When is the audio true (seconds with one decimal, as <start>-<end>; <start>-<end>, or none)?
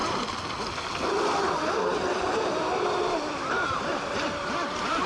0.0-2.2